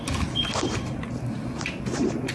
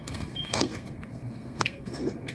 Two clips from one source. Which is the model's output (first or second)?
second